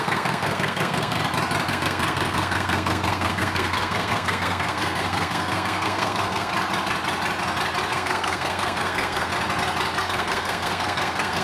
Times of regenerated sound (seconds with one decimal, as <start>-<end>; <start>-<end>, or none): 0.0-1.2; 1.7-6.5; 7.9-9.3; 10.0-11.4